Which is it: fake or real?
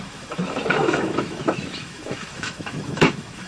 fake